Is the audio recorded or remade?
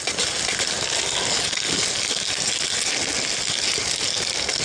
recorded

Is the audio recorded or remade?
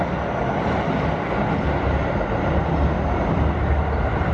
recorded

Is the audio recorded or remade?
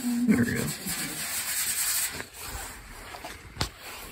remade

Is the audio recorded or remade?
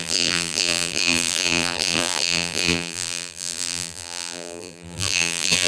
remade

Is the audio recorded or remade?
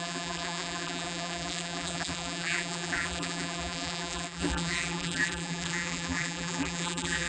remade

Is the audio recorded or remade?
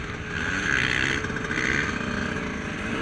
recorded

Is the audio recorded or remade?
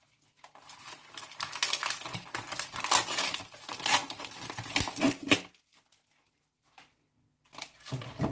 recorded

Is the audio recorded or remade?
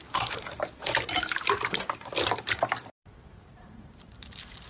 remade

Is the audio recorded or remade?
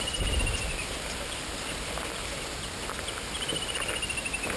remade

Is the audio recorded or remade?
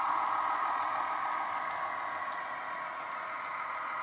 recorded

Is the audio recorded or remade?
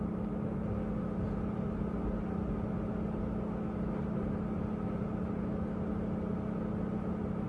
recorded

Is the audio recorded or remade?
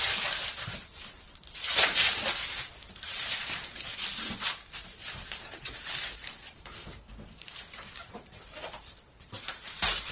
remade